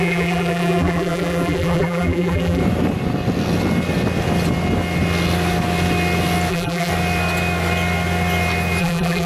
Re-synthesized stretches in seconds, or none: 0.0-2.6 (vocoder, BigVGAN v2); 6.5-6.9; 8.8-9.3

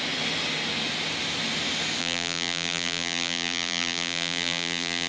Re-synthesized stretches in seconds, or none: 2.0-5.1 (vocoder, BigVGAN v2)

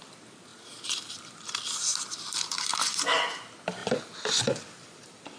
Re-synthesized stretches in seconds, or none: 0.5-1.1 (vocoder, BigVGAN v2); 1.9-2.7; 3.8-4.6